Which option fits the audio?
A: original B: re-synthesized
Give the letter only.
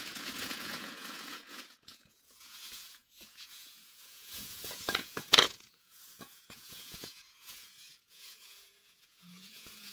B